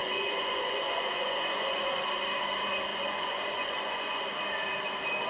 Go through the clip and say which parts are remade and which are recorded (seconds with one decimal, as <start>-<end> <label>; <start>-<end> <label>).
0.0-2.0 remade; 2.0-2.9 recorded; 2.9-4.2 remade; 4.2-5.3 recorded

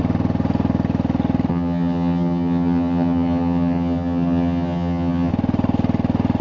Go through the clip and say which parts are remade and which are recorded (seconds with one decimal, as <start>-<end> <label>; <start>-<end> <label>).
0.0-1.5 recorded; 1.5-5.3 remade; 5.3-6.4 recorded

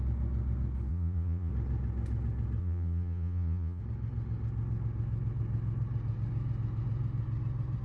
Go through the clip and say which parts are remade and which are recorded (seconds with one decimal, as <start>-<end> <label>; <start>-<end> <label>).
0.0-0.9 recorded; 0.9-1.5 remade; 1.5-2.6 recorded; 2.6-3.8 remade; 3.8-7.8 recorded

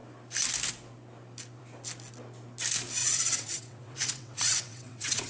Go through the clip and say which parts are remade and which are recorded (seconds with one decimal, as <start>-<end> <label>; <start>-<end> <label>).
0.0-3.0 recorded; 3.0-5.3 remade